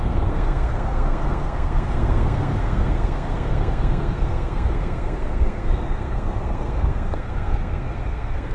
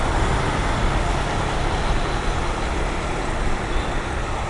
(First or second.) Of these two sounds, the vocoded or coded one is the first